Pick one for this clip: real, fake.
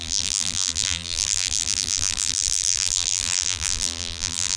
fake